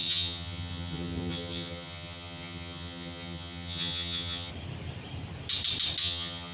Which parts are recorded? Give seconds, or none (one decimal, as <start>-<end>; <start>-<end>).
4.5-6.0